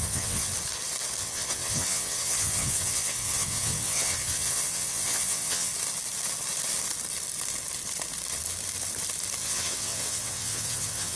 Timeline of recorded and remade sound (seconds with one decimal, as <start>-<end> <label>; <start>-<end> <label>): 0.0-0.5 remade; 0.5-1.2 recorded; 1.2-5.7 remade; 5.7-9.4 recorded; 9.4-11.2 remade